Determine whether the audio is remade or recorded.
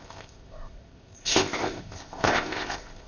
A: remade